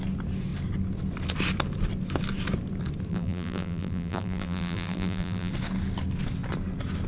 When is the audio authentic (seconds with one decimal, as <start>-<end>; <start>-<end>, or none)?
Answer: 0.0-3.1; 5.5-7.1